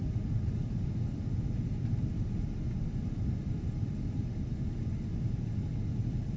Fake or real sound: fake